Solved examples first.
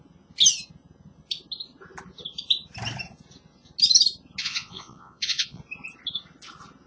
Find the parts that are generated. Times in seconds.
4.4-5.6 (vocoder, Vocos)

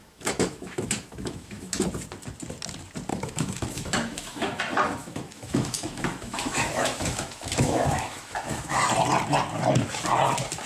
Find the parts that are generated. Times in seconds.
0.0-1.8 (autoencoder, DAC-VAE); 3.1-4.6; 5.0-8.8

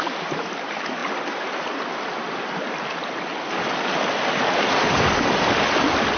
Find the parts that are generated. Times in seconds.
none

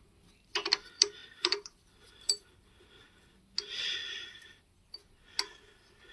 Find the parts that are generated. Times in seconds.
1.2-2.8 (vocoder, BigVGAN v2); 4.0-4.9

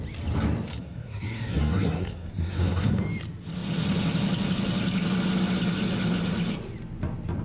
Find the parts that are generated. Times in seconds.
0.7-3.0 (codec, SNAC)

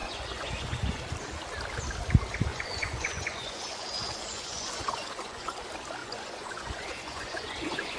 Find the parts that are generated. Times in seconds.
0.0-1.0 (vocoder, Vocos); 2.5-5.6; 6.0-8.0